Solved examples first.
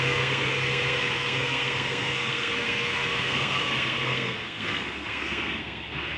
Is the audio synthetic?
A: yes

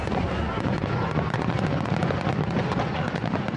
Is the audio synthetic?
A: yes